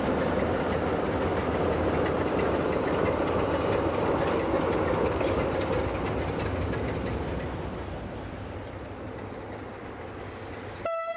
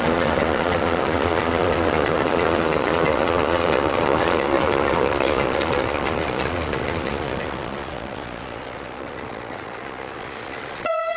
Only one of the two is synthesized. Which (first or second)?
second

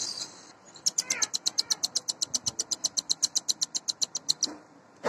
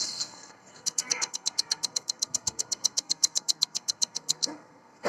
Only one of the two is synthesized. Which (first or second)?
second